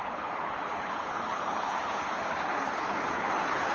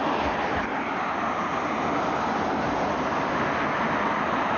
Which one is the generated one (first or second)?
first